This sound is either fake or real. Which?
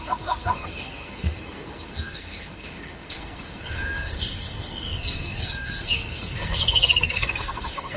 fake